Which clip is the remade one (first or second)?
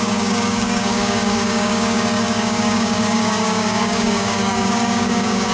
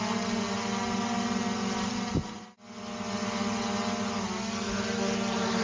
first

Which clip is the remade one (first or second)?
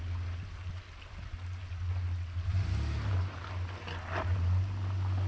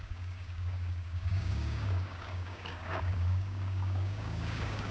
second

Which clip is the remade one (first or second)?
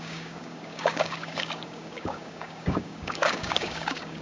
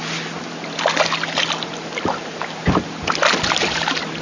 first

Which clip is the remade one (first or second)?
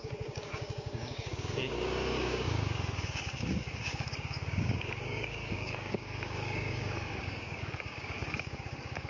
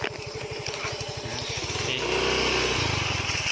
first